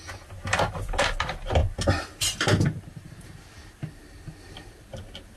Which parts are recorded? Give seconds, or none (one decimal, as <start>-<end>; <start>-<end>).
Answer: 0.0-5.4